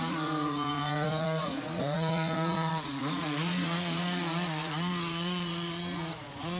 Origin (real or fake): fake